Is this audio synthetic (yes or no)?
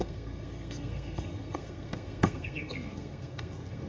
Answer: yes